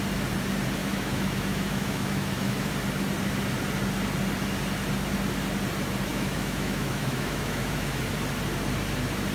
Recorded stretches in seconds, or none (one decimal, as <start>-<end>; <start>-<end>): 0.0-0.8; 2.7-6.1; 8.0-9.3